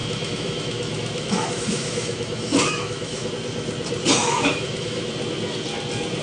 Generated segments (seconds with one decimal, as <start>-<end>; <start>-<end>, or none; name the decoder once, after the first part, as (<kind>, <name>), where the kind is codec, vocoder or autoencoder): 0.0-3.3 (autoencoder, DAC-VAE); 4.2-5.1